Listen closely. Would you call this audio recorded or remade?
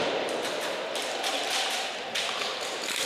remade